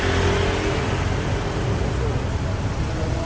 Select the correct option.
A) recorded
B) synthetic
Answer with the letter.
A